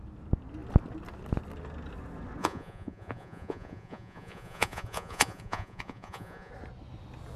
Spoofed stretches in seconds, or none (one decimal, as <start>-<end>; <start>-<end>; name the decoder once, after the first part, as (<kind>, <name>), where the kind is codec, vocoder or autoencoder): 2.4-6.5 (vocoder, Vocos)